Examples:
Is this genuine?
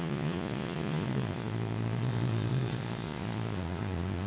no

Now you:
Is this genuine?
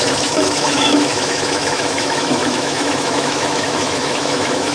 no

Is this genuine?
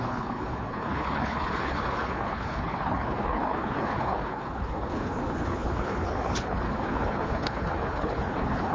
no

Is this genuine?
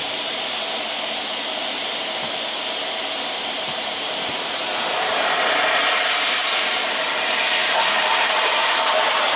no